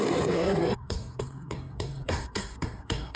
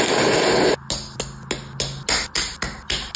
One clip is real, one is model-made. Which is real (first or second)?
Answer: second